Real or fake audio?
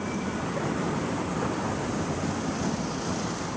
fake